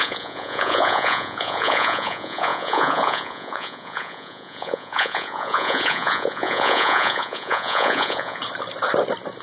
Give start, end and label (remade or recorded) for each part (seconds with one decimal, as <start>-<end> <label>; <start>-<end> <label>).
0.0-8.4 remade; 8.4-9.4 recorded